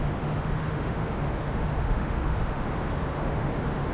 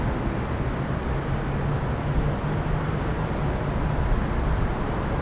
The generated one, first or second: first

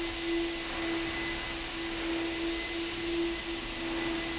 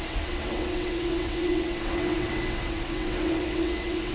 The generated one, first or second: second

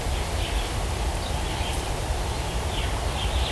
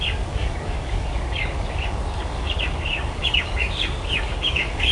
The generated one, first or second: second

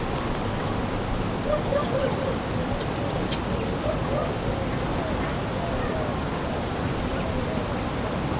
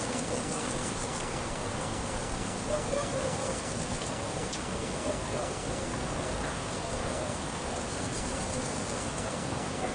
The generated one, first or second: second